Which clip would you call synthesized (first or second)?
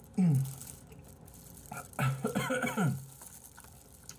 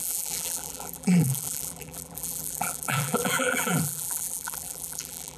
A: second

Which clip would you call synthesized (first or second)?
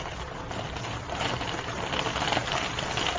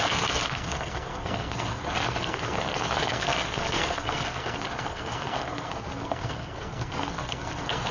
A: second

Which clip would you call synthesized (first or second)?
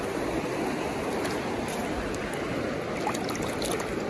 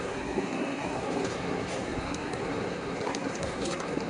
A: second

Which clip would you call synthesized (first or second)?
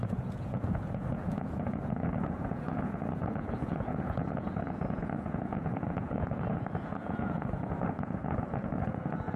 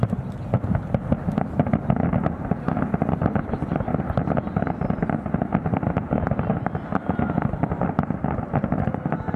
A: first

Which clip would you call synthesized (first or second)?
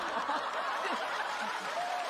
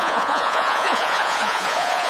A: second